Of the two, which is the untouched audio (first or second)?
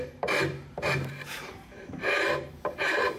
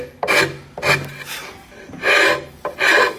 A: second